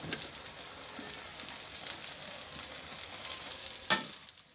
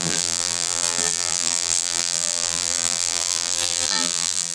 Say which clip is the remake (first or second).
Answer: second